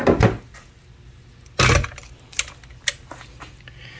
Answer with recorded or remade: recorded